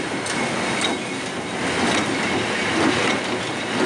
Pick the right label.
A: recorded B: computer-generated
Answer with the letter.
A